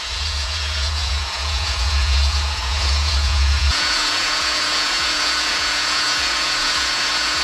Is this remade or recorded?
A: remade